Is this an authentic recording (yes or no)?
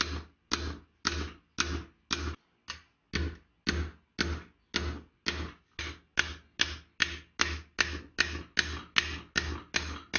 yes